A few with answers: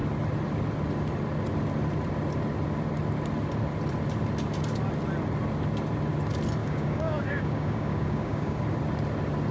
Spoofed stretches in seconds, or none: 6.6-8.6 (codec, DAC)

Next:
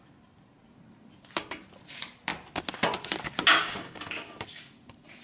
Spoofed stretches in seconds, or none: 3.6-4.4 (codec, DAC)

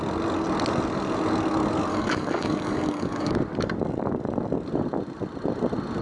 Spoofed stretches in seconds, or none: 1.9-3.3 (codec, DAC)

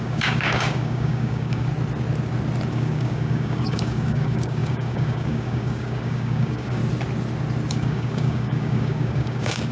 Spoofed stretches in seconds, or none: 0.0-1.7 (codec, DAC); 2.7-6.8; 7.7-9.7

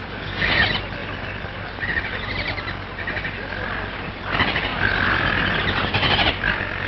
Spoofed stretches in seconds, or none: 0.0-0.6 (codec, DAC)

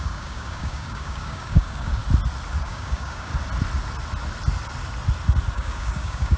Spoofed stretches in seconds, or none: 0.0-2.0 (codec, DAC); 2.6-3.3; 5.5-6.4